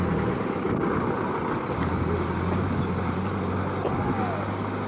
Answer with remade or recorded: recorded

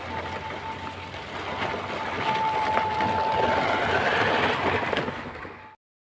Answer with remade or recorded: recorded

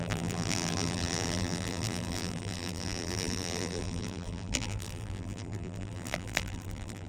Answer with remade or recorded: remade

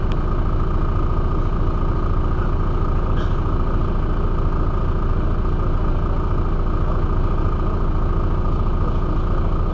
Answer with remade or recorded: recorded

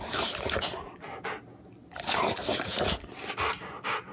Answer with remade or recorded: recorded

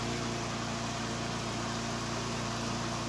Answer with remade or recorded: recorded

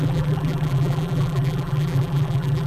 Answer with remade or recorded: remade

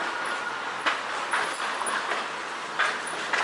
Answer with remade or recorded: recorded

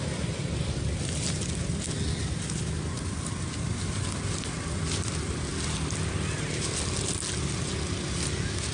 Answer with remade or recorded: recorded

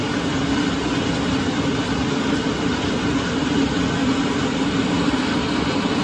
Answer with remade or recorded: recorded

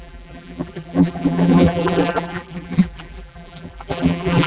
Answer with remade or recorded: remade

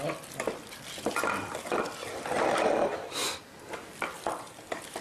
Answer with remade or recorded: recorded